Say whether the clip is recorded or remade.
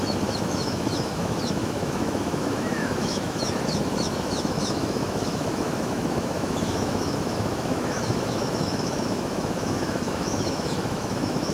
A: remade